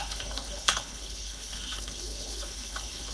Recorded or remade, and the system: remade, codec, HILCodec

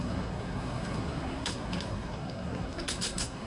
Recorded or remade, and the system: remade, codec, SNAC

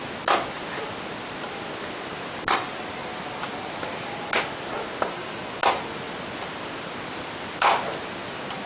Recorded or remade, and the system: recorded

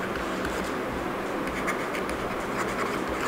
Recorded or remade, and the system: recorded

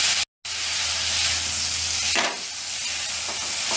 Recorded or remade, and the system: recorded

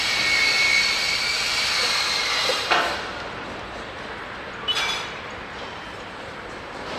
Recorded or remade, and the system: remade, vocoder, BigVGAN v2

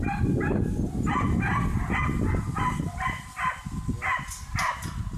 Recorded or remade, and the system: recorded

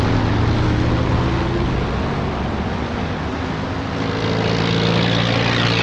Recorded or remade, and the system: recorded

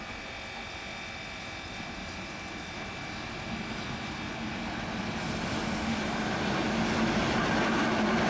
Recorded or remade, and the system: recorded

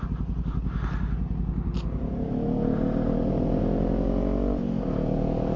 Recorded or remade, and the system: recorded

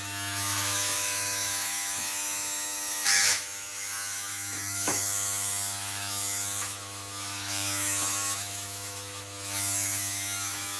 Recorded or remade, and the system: remade, autoencoder, DAC-VAE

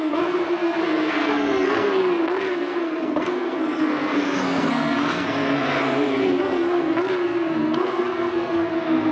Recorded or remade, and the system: remade, codec, SNAC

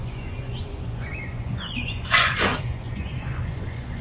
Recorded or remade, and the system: remade, vocoder, Vocos